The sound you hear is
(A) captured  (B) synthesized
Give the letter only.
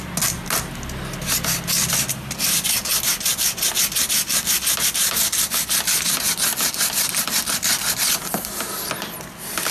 A